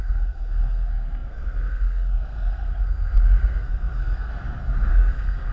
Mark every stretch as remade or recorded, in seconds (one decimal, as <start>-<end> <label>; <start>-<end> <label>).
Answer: 0.0-4.3 remade; 4.3-4.9 recorded; 4.9-5.5 remade